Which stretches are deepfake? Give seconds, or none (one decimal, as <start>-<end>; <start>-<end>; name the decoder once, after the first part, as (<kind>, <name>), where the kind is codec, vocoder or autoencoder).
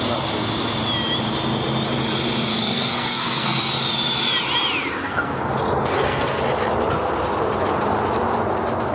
2.5-3.7 (codec, SNAC); 5.0-5.5; 5.9-6.4